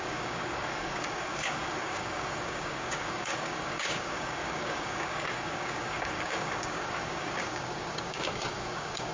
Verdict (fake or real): fake